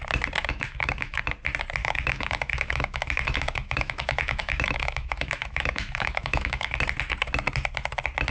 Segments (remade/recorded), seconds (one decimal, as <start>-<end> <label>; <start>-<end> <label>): 0.0-0.4 recorded; 0.4-1.2 remade; 1.2-1.8 recorded; 1.8-6.8 remade; 6.8-8.3 recorded